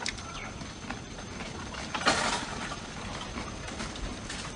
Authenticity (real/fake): real